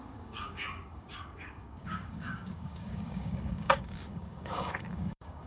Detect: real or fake fake